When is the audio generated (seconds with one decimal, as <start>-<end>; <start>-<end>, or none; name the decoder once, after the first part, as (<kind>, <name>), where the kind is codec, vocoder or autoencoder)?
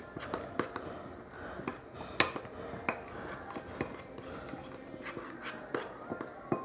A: none